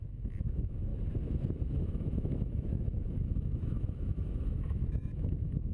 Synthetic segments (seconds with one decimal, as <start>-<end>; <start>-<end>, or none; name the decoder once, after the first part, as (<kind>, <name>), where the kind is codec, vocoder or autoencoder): 0.0-0.9 (autoencoder, DAC-VAE); 1.8-5.7